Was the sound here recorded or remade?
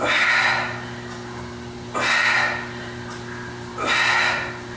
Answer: recorded